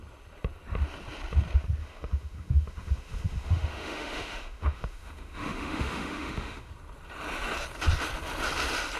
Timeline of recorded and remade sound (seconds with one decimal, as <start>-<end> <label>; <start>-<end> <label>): 0.0-1.8 recorded; 1.8-6.7 remade; 6.7-9.0 recorded